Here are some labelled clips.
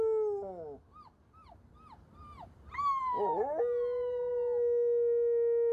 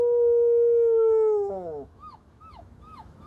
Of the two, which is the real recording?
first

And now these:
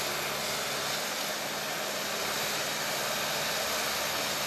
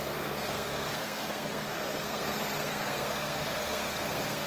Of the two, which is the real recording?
first